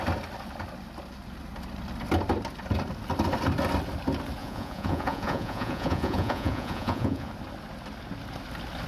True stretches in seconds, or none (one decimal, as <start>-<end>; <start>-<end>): 0.0-4.4; 7.3-8.9